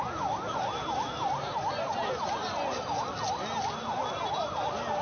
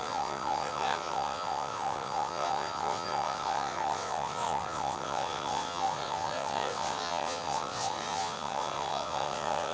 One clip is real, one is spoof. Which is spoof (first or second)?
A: second